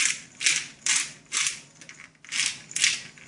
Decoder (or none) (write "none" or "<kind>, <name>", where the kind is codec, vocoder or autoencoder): none